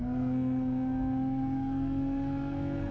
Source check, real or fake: fake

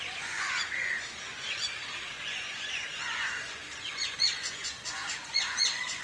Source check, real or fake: fake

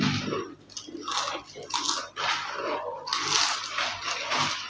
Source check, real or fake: real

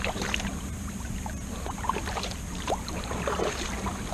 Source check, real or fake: fake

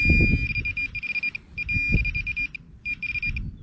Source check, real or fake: real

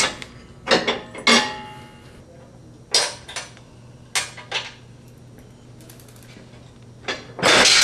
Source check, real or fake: real